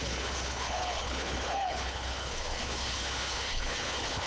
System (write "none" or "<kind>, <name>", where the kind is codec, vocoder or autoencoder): codec, HILCodec